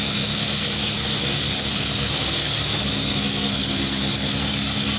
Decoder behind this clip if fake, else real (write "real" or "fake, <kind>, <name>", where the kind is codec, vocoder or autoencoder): fake, codec, SNAC